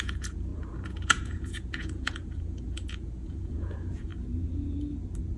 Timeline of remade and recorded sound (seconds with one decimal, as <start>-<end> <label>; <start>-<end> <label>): 0.0-4.1 remade; 4.1-5.4 recorded